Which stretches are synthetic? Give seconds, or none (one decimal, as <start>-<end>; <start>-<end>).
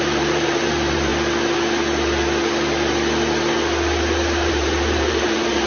0.0-1.1; 4.5-5.7